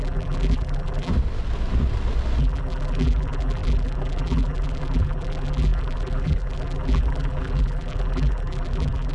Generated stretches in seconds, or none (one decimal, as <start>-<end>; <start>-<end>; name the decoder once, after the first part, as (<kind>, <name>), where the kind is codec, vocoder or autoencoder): 0.0-1.1 (vocoder, BigVGAN v2); 2.4-9.1